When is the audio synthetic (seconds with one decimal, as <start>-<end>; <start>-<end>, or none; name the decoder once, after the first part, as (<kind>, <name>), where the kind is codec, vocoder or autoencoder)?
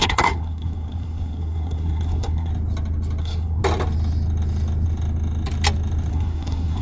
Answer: 0.0-2.5 (codec, SNAC); 3.2-3.6; 6.1-6.8